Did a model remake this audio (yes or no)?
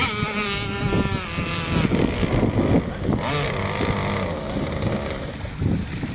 no